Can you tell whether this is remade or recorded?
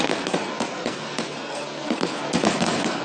remade